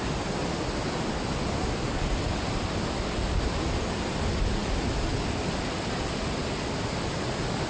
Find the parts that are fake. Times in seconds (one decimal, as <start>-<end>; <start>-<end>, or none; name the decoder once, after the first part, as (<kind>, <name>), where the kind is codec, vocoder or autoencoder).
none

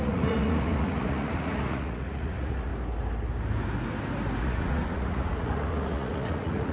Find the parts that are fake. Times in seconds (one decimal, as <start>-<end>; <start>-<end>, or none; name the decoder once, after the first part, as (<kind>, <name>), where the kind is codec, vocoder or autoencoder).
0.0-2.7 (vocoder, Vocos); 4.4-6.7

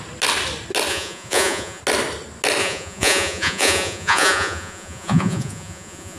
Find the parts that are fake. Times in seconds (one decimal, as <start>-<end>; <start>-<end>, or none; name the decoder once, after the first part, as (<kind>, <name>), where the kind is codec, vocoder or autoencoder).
0.9-1.8 (vocoder, Vocos); 2.6-6.2